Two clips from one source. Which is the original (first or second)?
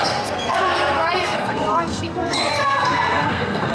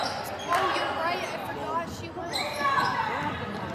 second